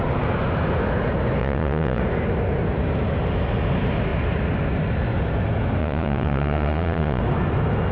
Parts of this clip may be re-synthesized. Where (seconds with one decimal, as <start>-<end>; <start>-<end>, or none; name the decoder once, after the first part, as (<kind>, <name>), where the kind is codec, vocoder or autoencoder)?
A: 1.4-2.0 (vocoder, Vocos); 5.8-7.2

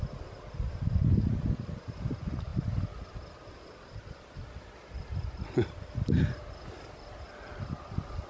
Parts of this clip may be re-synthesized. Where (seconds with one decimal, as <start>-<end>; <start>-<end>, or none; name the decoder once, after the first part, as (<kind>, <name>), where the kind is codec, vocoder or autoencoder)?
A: none

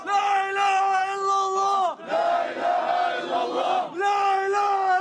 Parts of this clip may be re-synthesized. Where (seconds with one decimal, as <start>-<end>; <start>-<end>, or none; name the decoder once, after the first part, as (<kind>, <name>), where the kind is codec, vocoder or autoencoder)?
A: none

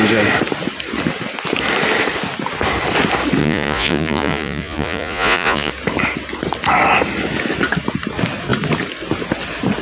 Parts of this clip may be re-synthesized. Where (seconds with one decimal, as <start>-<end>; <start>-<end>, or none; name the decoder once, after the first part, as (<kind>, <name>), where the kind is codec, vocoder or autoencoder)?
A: 3.4-5.7 (vocoder, Vocos)

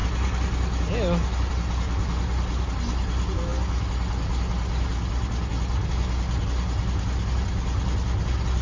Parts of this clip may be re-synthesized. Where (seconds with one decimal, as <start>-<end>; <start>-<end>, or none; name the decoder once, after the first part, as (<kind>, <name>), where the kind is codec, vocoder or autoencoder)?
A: none